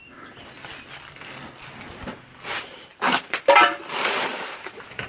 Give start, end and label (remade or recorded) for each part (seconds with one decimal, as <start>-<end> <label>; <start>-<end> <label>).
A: 0.0-2.9 recorded; 2.9-4.5 remade; 4.5-5.1 recorded